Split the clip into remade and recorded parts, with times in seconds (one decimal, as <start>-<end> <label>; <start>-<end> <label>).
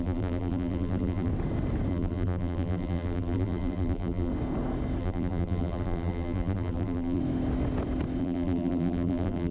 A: 0.0-1.3 remade; 1.3-1.9 recorded; 1.9-4.3 remade; 4.3-5.0 recorded; 5.0-7.2 remade; 7.2-8.2 recorded; 8.2-9.5 remade